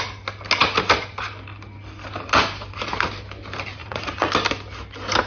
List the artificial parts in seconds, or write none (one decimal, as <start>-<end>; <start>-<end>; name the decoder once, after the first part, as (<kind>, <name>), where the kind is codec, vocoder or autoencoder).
3.8-4.3 (vocoder, Vocos)